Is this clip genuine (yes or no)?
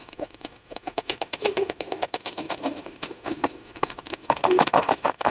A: no